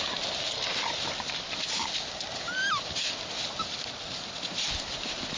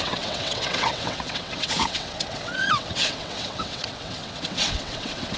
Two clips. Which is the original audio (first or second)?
first